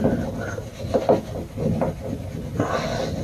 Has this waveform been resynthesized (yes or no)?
no